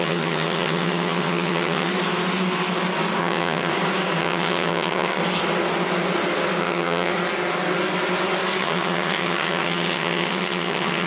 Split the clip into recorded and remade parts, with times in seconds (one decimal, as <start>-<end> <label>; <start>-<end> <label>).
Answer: 0.0-1.9 remade; 1.9-3.2 recorded; 3.2-3.7 remade; 3.7-4.2 recorded; 4.2-5.2 remade; 5.2-6.6 recorded; 6.6-7.1 remade; 7.1-8.6 recorded; 8.6-11.1 remade